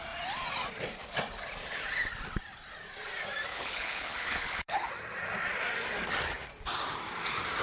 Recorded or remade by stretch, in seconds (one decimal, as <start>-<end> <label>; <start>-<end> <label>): 0.0-3.5 recorded; 3.5-4.9 remade; 4.9-7.6 recorded